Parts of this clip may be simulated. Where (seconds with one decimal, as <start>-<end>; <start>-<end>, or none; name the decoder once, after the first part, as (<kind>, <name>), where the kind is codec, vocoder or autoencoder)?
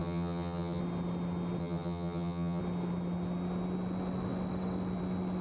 0.0-0.8 (vocoder, HiFi-GAN); 1.6-2.6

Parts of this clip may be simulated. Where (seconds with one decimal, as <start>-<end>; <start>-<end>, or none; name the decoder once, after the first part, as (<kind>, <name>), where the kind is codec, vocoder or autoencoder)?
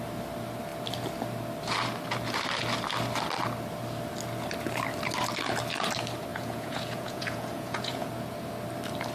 6.3-8.1 (vocoder, Vocos)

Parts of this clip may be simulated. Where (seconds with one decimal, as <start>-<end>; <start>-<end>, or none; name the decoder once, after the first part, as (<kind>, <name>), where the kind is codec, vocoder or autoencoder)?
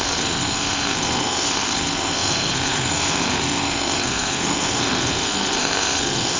0.0-6.4 (codec, SNAC)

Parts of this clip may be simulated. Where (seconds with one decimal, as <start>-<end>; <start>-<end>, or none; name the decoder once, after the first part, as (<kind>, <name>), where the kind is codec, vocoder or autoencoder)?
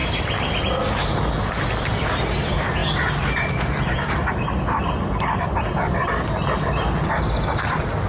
none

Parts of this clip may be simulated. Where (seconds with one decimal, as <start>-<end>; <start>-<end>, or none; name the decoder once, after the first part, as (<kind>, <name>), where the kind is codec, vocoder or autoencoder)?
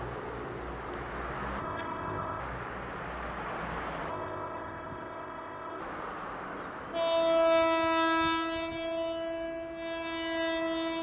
1.6-2.4 (codec, ZipCodec); 4.1-5.8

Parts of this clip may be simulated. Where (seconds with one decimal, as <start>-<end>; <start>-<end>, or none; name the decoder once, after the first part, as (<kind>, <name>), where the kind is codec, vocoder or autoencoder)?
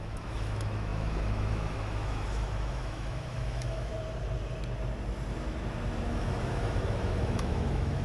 0.0-3.9 (autoencoder, DAC-VAE); 6.1-8.0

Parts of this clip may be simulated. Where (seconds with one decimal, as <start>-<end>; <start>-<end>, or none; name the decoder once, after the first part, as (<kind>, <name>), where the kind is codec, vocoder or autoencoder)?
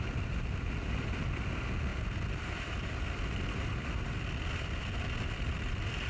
none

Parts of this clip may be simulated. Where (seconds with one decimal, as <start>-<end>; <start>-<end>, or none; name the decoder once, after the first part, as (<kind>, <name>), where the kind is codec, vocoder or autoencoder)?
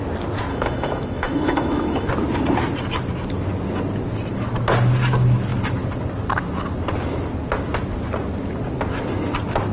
0.5-2.1 (autoencoder, DAC-VAE)